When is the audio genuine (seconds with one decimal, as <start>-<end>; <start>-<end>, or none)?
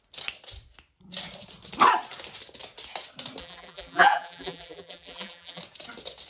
0.0-3.4; 5.6-6.3